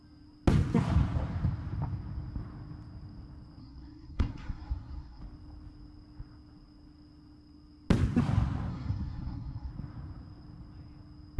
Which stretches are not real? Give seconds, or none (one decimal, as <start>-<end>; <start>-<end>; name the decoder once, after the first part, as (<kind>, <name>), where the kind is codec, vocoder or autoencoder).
3.6-5.2 (codec, SNAC); 8.7-9.7